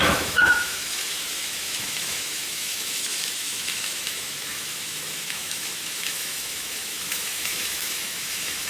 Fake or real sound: fake